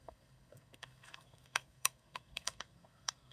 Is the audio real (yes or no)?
no